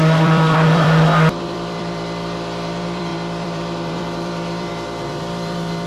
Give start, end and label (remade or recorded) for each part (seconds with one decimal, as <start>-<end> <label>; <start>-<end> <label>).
0.0-5.9 remade